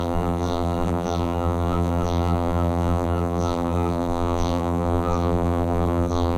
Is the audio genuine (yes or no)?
no